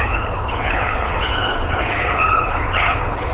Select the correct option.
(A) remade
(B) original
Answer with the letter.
A